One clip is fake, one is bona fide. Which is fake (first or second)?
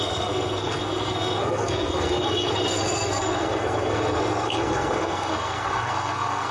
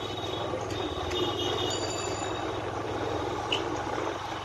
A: first